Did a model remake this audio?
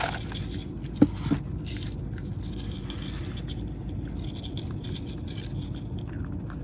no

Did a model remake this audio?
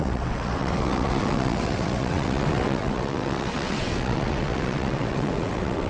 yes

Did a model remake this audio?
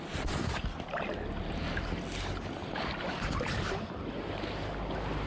no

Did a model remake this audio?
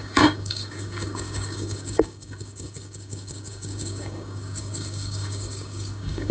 yes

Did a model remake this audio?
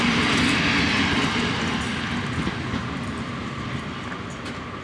no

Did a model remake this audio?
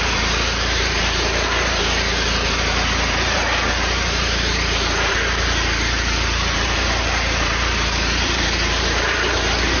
yes